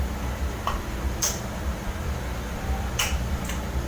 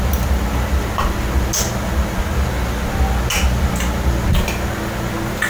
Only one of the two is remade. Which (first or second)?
first